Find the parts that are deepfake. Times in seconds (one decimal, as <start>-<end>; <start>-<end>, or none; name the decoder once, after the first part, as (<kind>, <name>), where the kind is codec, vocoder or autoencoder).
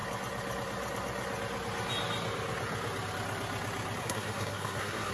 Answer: 4.0-5.1 (codec, SNAC)